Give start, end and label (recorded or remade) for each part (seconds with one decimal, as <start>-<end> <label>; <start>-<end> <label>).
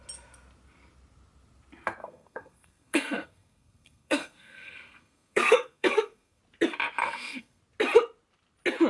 0.0-2.0 recorded; 2.0-6.4 remade; 6.4-7.0 recorded; 7.0-7.6 remade; 7.6-8.9 recorded